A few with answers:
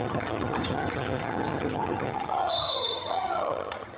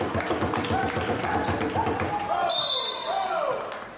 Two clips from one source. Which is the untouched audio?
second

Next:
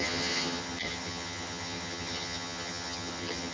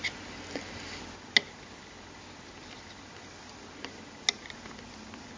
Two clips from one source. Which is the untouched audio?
second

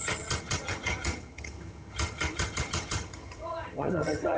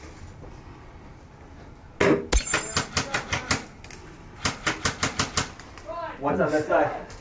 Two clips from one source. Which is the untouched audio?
second